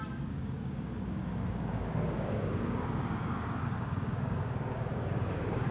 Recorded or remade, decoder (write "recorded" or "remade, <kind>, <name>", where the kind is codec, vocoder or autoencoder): remade, codec, DAC